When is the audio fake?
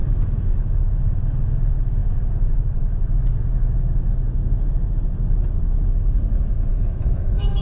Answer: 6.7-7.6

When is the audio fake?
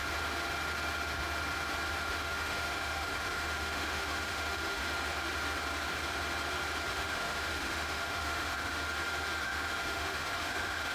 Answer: 2.1-4.8; 6.9-8.8; 9.4-10.9